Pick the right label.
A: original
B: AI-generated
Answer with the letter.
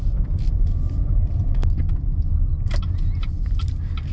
A